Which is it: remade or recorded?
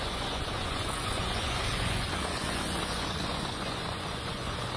remade